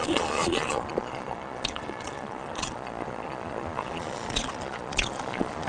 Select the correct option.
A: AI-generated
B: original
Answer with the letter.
A